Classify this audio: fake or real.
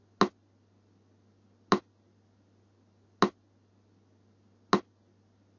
real